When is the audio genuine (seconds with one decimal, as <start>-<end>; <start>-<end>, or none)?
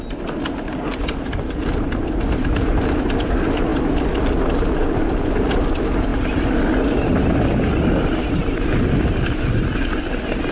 0.0-10.5